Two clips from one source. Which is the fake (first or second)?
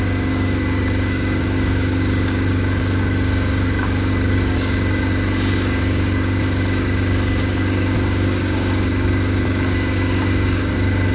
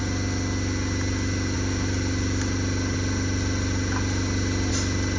first